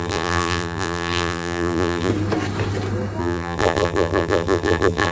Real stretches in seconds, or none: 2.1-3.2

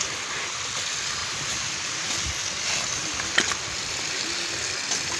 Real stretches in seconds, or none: 0.0-1.2; 2.1-5.2

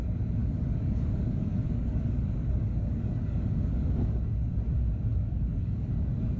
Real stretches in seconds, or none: 0.0-0.4; 4.2-5.1; 5.9-6.4

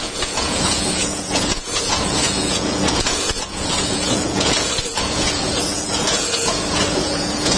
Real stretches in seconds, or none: none

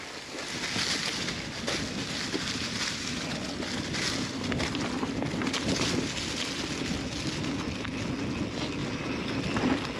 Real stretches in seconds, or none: 0.0-8.8; 9.4-10.0

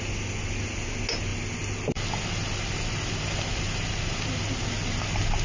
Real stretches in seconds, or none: 0.0-5.4

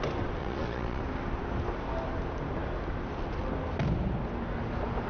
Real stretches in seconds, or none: 0.0-0.4; 1.0-5.1

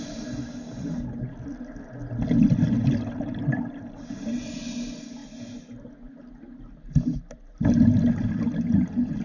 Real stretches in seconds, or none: 0.0-9.2